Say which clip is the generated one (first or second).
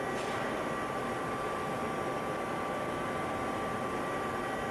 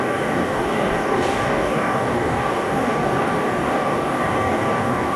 second